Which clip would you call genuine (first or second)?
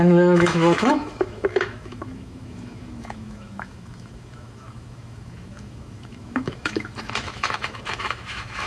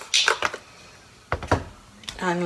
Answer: second